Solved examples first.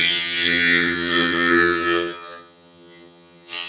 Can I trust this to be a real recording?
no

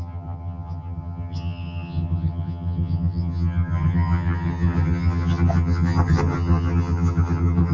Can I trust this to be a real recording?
no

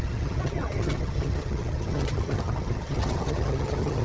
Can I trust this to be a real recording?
no